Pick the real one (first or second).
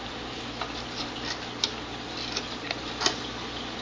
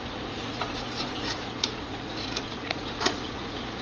first